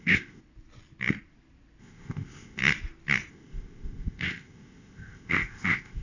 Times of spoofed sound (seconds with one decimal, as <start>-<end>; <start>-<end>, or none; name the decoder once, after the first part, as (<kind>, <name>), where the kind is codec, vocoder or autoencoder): 0.0-0.4 (codec, ZipCodec); 1.8-2.6; 3.3-6.0